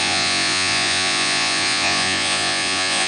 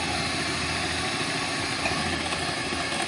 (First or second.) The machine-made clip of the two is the first